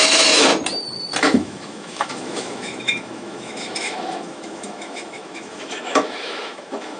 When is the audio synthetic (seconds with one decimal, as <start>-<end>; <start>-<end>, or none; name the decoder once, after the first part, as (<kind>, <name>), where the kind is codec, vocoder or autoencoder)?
0.0-0.5 (autoencoder, DAC-VAE); 1.2-7.0